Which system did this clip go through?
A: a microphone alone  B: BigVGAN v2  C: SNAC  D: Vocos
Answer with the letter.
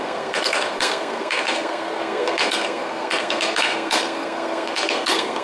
C